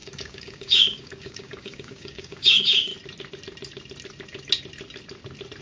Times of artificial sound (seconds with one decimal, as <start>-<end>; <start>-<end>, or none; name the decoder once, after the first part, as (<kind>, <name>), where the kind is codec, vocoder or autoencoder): 0.0-2.9 (codec, DAC)